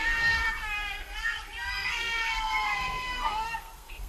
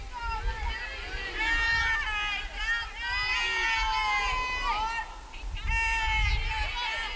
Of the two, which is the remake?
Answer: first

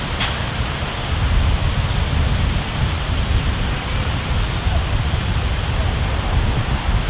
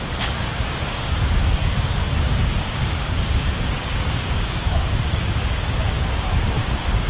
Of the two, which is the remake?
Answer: second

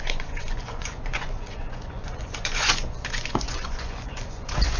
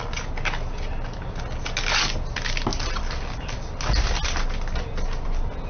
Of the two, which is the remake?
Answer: first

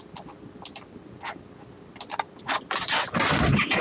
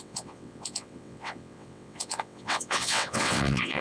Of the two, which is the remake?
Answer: second